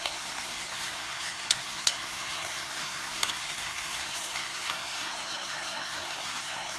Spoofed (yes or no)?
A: yes